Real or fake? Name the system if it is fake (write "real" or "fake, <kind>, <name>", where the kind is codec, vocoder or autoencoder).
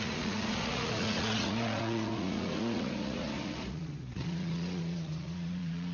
fake, vocoder, Vocos